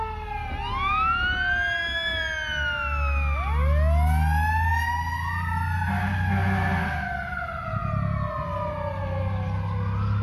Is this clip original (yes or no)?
yes